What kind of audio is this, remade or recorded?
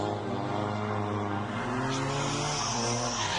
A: recorded